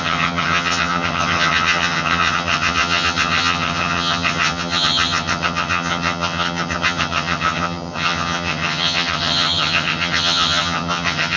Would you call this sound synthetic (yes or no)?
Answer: yes